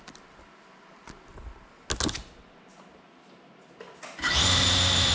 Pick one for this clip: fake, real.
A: real